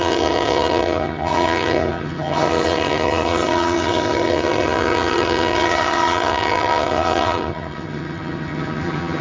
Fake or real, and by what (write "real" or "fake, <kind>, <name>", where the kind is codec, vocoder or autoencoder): fake, vocoder, HiFi-GAN